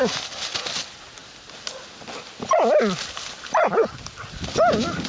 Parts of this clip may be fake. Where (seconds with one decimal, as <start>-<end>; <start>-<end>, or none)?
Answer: none